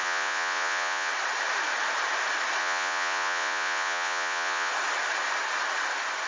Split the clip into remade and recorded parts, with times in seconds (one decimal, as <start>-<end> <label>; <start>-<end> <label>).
0.0-1.1 remade; 1.1-2.6 recorded; 2.6-4.7 remade; 4.7-6.3 recorded